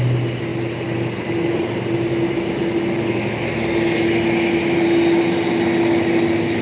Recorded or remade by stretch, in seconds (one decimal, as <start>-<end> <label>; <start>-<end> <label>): 0.0-6.6 recorded